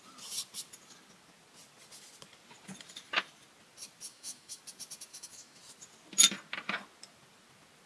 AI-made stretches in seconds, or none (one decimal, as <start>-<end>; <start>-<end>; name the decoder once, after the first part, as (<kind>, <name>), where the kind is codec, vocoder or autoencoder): 4.1-4.6 (autoencoder, DAC-VAE); 5.1-5.6